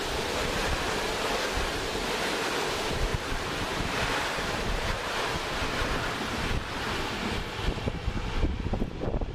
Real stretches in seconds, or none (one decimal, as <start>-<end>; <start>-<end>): 0.0-3.1; 4.6-9.3